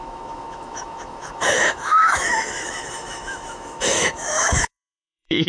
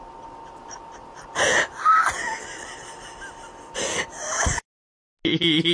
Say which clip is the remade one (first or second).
first